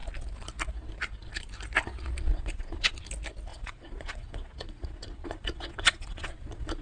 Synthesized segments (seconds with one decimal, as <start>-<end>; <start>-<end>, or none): 2.3-2.9; 3.5-6.8